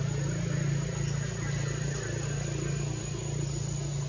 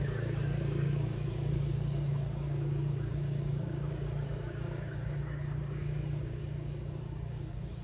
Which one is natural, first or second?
first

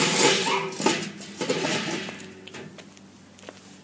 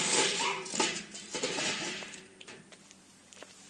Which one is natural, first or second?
first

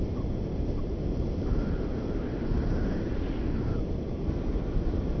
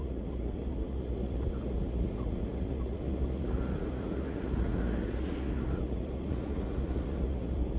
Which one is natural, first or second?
first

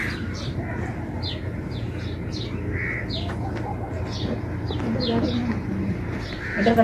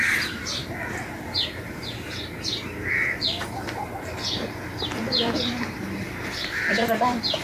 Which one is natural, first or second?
first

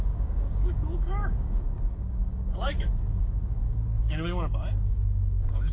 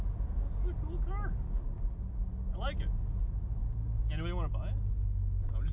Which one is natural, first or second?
second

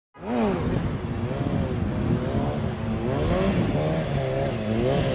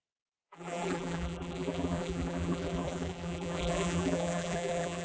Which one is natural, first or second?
first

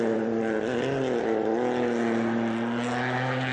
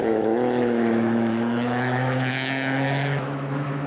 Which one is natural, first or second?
first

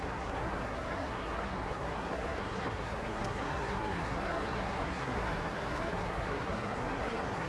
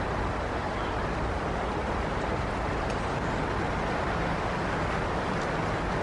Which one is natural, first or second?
second